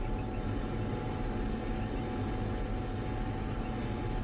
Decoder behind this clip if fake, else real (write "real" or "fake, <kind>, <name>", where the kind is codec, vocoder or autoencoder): real